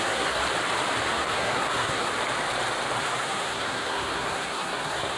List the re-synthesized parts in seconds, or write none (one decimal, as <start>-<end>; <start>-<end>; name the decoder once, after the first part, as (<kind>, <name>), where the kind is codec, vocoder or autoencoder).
0.0-0.4 (codec, SNAC); 1.1-2.1; 3.0-5.2